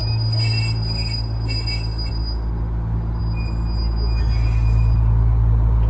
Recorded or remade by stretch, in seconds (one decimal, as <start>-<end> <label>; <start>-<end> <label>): 0.0-5.9 recorded